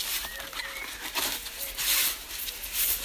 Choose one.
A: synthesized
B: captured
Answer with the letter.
B